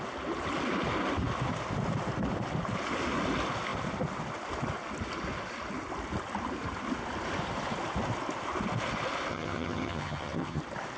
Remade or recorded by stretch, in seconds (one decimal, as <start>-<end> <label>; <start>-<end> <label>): 0.0-9.3 recorded; 9.3-10.6 remade; 10.6-11.0 recorded